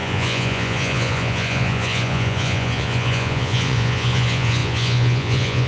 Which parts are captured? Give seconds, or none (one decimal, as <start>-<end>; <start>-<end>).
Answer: none